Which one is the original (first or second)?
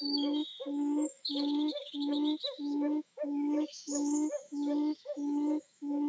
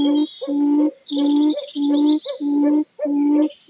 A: second